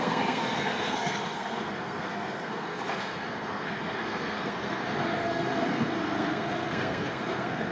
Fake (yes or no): yes